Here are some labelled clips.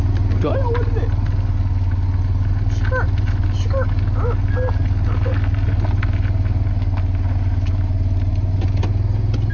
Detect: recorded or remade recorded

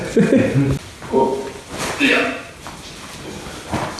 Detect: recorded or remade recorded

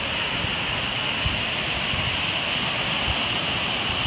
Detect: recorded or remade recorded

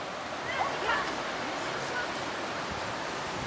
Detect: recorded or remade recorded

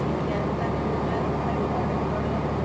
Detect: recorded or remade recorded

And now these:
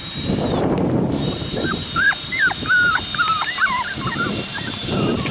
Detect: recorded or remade remade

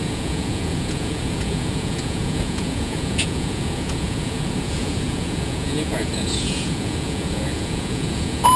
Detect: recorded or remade remade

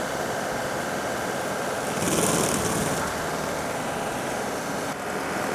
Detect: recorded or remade recorded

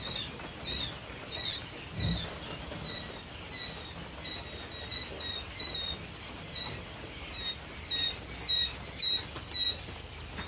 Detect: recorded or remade recorded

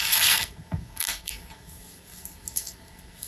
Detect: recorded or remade remade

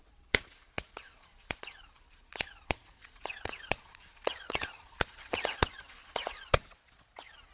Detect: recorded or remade remade